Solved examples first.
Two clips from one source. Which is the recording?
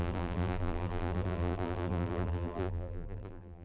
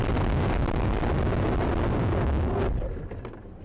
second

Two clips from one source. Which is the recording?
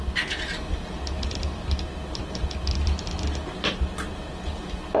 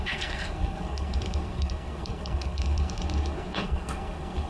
first